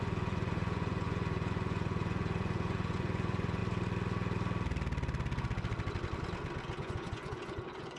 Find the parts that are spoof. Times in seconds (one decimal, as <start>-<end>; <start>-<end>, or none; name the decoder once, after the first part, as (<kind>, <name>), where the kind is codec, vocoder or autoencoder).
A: 0.0-3.6 (vocoder, Vocos); 6.8-8.0